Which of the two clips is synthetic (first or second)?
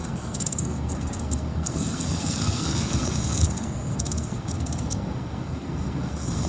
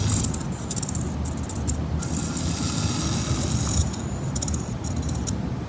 first